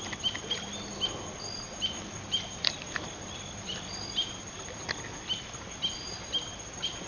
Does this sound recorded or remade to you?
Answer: recorded